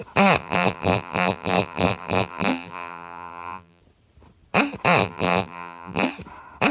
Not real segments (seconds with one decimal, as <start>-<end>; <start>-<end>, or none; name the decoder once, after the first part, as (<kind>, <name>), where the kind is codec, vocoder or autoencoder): 0.4-3.8 (vocoder, BigVGAN v2); 5.0-6.1